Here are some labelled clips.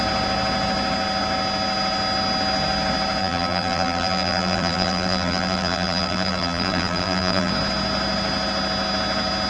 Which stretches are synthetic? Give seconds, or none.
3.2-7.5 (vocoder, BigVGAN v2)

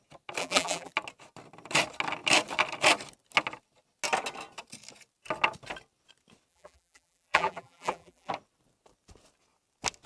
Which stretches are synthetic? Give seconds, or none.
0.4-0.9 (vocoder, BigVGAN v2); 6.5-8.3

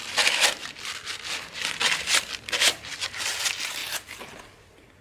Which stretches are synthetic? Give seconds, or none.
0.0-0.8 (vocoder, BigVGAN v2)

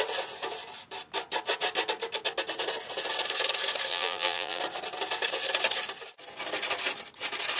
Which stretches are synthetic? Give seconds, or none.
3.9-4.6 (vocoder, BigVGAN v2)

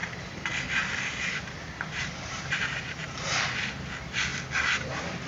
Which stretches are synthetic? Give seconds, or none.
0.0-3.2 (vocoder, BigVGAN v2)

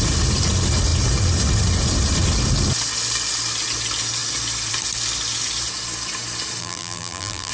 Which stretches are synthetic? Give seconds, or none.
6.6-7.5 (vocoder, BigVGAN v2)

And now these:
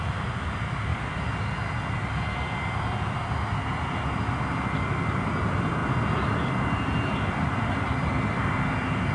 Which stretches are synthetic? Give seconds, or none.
0.9-1.4 (vocoder, BigVGAN v2); 5.8-8.4

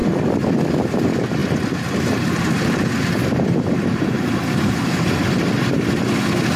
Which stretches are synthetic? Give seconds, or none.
1.4-5.4 (vocoder, BigVGAN v2)